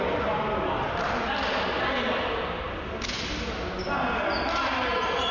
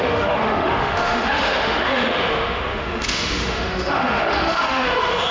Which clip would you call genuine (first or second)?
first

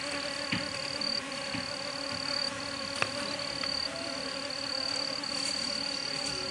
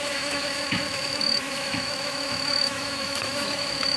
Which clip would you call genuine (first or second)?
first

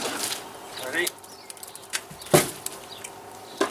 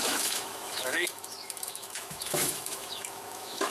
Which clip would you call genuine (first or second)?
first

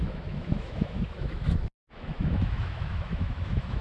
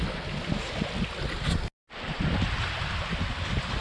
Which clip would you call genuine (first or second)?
second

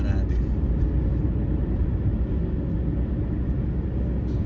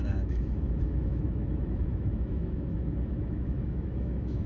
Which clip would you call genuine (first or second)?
first